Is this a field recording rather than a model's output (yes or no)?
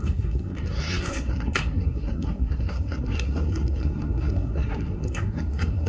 no